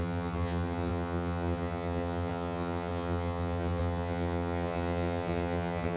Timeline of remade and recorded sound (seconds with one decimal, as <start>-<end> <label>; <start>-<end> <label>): 0.0-6.0 remade